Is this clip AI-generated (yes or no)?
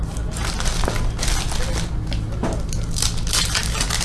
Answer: no